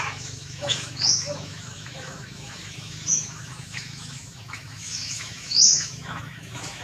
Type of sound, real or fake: fake